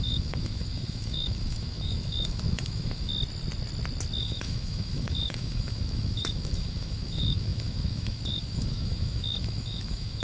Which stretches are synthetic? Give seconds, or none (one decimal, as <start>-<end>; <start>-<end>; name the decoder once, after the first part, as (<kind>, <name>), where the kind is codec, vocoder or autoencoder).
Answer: 0.0-3.1 (autoencoder, DAC-VAE); 4.2-10.2